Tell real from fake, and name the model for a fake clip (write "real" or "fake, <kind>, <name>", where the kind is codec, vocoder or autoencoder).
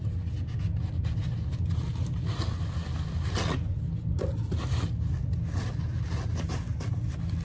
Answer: real